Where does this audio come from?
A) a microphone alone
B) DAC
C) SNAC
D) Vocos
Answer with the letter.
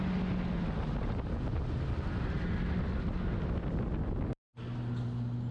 A